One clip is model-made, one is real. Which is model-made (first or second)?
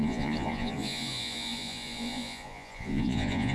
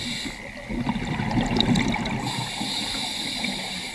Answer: first